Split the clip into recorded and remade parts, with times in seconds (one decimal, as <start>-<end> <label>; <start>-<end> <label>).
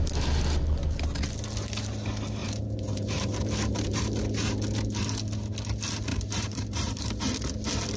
0.0-2.4 recorded; 2.4-4.0 remade; 4.0-6.1 recorded; 6.1-7.2 remade; 7.2-8.0 recorded